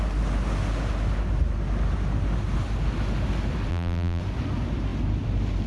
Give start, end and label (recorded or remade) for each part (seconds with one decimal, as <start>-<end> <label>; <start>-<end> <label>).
0.0-3.7 recorded; 3.7-4.2 remade; 4.2-5.7 recorded